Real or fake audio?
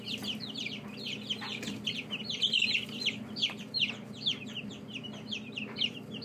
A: fake